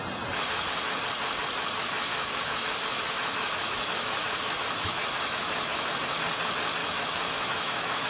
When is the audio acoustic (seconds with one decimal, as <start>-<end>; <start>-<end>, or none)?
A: 0.0-2.1; 5.9-6.8